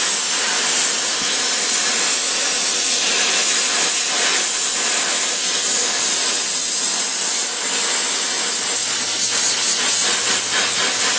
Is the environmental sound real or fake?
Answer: real